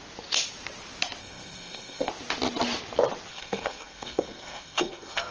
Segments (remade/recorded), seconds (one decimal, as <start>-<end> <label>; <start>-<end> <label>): 0.0-1.2 recorded; 1.2-2.1 remade; 2.1-3.3 recorded; 3.3-5.3 remade